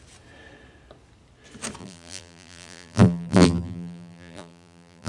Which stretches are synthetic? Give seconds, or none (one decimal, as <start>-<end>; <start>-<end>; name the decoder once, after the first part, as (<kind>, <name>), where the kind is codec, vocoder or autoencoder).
1.8-5.1 (vocoder, BigVGAN v2)